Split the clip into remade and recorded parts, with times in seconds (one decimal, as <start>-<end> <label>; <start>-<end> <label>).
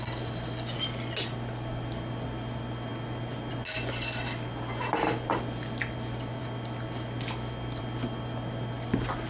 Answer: 0.0-9.3 recorded